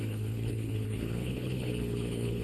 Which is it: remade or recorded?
remade